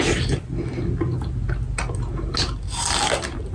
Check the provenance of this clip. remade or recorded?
recorded